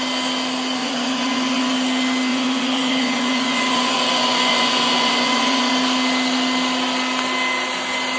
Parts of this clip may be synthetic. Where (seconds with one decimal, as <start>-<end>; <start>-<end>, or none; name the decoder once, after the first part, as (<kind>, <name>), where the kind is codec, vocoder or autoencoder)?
0.8-1.7 (vocoder, Vocos); 2.3-5.7